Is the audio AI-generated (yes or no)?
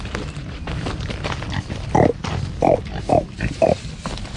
no